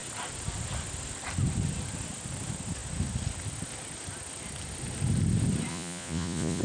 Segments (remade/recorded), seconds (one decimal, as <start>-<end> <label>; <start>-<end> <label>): 0.0-5.7 recorded; 5.7-6.6 remade